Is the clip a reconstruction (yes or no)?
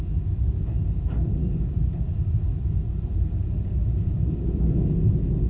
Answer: no